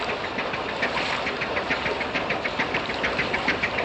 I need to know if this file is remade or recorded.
recorded